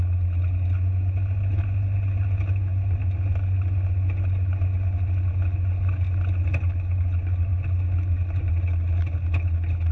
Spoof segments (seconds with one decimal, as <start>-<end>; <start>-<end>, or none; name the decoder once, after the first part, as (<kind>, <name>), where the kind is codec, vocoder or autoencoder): none